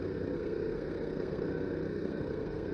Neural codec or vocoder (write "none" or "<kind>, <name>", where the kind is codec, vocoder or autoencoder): codec, SNAC